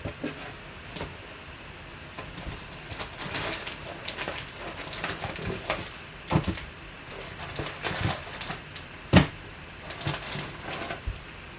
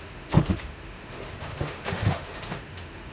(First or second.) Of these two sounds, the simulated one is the second